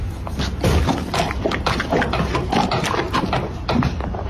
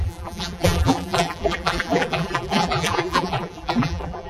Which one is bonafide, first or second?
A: first